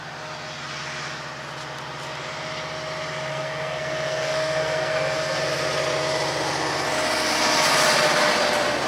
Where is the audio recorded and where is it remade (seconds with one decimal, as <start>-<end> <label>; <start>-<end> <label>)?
0.0-3.3 recorded; 3.3-5.4 remade; 5.4-8.9 recorded